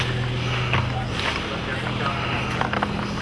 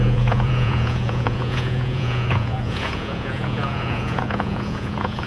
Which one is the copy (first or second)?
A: second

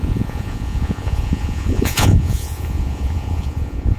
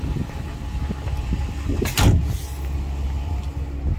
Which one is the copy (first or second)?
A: first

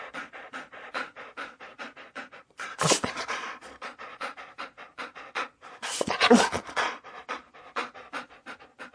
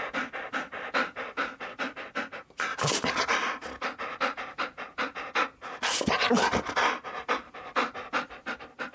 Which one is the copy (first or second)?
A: first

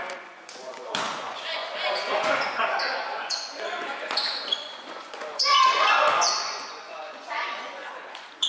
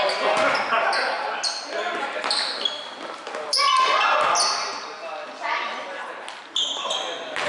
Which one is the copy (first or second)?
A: first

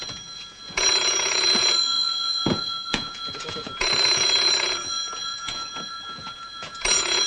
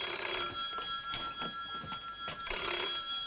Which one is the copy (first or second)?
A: first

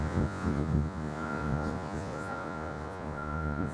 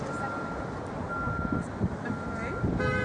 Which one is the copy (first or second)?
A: first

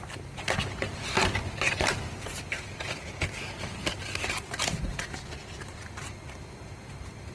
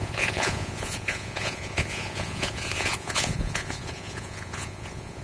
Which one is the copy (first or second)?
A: second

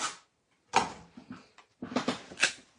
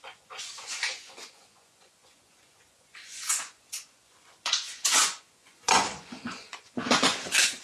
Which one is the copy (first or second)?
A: second